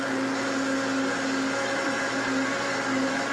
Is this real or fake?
real